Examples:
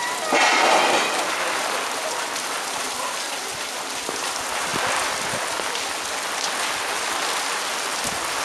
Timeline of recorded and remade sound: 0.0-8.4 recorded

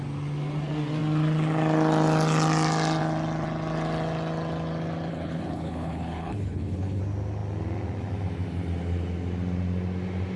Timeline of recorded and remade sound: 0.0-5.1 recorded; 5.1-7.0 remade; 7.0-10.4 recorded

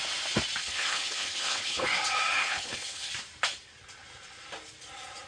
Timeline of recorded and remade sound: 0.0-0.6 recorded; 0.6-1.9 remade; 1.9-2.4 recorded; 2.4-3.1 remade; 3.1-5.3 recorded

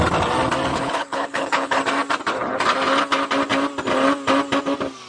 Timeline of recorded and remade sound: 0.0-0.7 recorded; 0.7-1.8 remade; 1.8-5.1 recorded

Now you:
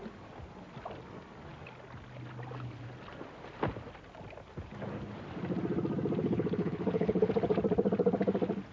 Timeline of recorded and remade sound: 0.0-6.2 recorded; 6.2-7.3 remade; 7.3-8.7 recorded

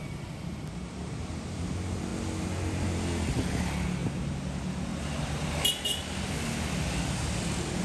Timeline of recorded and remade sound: 0.0-7.8 recorded

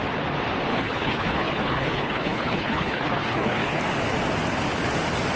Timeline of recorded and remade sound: 0.0-0.7 recorded; 0.7-3.8 remade; 3.8-5.4 recorded

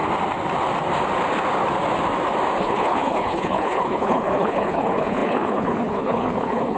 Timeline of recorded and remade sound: 0.0-2.6 recorded; 2.6-6.8 remade